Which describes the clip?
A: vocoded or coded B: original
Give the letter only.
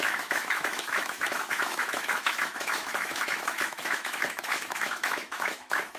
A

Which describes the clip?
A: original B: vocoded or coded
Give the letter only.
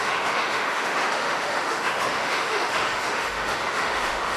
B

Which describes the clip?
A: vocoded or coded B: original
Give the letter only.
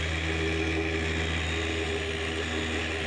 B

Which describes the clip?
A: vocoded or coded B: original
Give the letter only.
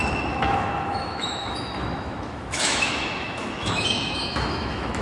A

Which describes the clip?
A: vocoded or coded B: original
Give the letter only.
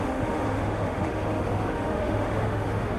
A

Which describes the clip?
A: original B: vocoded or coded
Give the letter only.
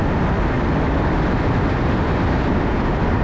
A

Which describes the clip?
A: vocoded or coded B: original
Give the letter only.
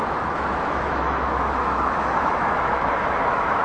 A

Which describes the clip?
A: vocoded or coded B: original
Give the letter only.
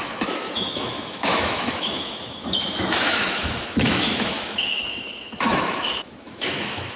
A